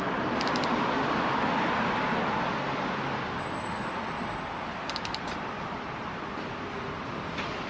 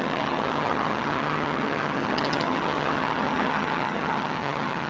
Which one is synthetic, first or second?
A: second